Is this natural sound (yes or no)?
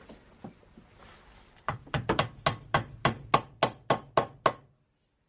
yes